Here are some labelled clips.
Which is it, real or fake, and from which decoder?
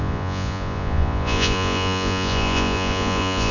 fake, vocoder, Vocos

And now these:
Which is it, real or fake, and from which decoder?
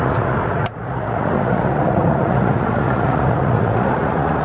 fake, vocoder, Vocos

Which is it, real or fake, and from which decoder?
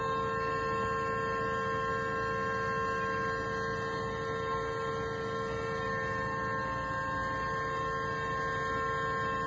real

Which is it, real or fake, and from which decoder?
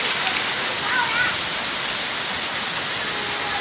real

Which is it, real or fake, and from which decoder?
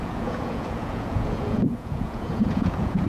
fake, vocoder, Vocos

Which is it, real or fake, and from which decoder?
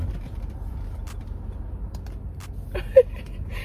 real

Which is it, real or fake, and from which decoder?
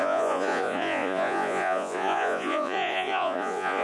fake, vocoder, Vocos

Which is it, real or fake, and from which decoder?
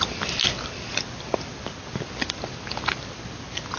real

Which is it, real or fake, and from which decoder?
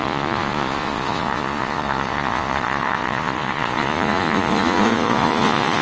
fake, vocoder, Vocos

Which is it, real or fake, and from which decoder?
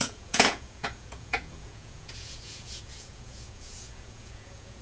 fake, vocoder, Vocos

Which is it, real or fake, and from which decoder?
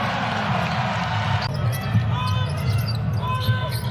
real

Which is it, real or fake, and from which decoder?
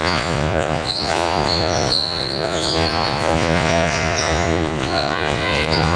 fake, vocoder, Vocos